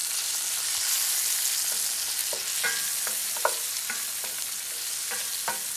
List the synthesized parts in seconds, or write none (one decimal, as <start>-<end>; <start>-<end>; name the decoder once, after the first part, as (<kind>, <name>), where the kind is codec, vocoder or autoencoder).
none